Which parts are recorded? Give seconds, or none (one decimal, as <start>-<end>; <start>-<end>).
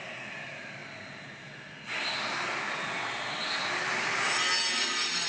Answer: 0.0-5.3